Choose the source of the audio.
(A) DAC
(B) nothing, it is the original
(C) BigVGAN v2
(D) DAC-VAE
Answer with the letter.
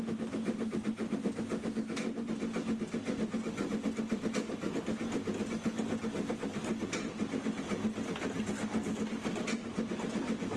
B